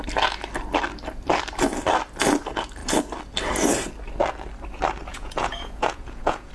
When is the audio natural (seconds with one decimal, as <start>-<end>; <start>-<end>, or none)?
0.0-5.1